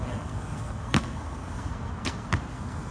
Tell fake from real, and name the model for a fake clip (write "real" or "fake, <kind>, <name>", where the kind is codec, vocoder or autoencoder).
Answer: fake, codec, SNAC